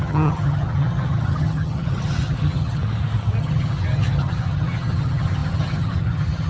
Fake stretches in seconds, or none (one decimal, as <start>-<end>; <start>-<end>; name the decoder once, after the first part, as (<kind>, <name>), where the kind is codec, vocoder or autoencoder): 0.0-2.8 (vocoder, HiFi-GAN); 3.4-6.5

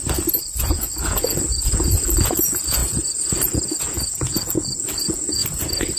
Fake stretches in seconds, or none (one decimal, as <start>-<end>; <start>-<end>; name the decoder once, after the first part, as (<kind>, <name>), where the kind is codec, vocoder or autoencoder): 0.6-5.4 (vocoder, Vocos)

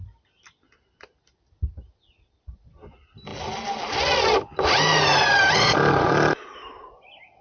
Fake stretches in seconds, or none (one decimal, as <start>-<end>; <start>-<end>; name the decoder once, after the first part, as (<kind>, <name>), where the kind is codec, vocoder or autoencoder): none

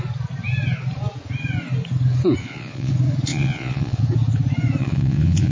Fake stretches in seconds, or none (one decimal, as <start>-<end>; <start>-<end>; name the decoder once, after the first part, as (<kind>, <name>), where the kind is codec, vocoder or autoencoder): 2.4-2.9 (vocoder, Vocos); 3.3-4.0; 4.8-5.5

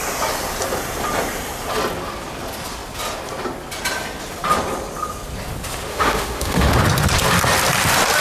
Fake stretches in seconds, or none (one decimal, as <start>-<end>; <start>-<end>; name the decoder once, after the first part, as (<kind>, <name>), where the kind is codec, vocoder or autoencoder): 5.9-6.7 (autoencoder, DAC-VAE)

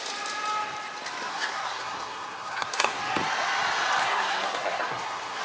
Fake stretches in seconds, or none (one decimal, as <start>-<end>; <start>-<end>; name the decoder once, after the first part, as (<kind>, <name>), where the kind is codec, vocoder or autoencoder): 1.3-3.0 (codec, SNAC); 4.0-5.4

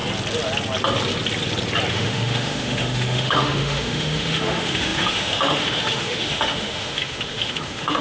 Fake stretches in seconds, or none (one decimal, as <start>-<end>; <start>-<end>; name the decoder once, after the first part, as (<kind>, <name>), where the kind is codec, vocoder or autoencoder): 1.9-8.0 (autoencoder, DAC-VAE)